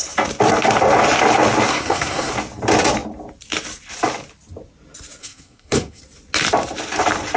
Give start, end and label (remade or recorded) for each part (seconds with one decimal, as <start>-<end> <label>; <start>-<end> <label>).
0.0-1.7 recorded; 1.7-2.3 remade; 2.3-5.2 recorded; 5.2-6.0 remade; 6.0-7.4 recorded